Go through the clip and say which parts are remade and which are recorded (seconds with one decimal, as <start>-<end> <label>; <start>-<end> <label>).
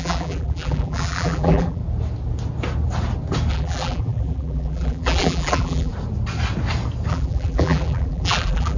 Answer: 0.0-1.8 remade; 1.8-3.5 recorded; 3.5-5.9 remade; 5.9-7.1 recorded; 7.1-8.8 remade